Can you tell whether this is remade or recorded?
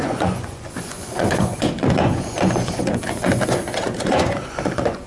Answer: remade